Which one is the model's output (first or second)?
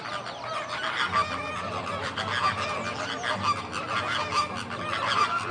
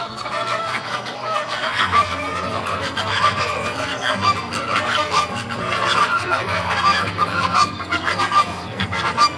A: second